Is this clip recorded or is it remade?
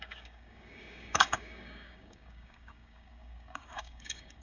remade